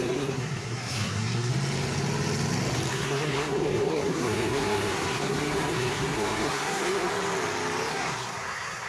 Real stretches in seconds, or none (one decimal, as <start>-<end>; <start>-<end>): 1.5-2.9; 7.1-7.9